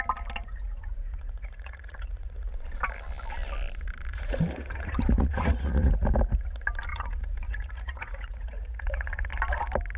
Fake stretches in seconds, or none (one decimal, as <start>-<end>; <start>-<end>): 0.4-2.5; 4.1-5.9; 6.9-9.3